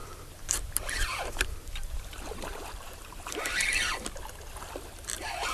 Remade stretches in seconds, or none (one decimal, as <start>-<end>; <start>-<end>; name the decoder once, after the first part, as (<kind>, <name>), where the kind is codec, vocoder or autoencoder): 0.0-3.3 (vocoder, BigVGAN v2)